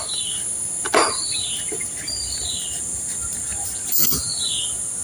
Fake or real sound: real